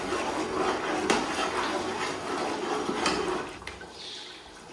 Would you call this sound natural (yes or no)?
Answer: yes